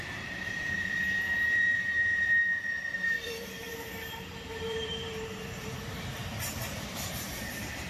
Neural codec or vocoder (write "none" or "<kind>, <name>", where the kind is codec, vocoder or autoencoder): vocoder, BigVGAN v2